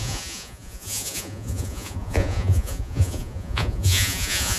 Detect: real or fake fake